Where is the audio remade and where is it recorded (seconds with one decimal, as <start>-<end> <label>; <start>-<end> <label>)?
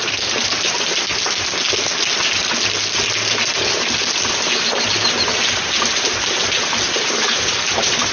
0.0-5.3 recorded; 5.3-8.1 remade